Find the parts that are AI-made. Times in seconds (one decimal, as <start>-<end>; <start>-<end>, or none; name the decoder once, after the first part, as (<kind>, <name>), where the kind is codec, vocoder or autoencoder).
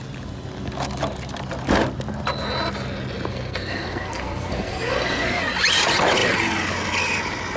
3.3-5.4 (codec, SNAC)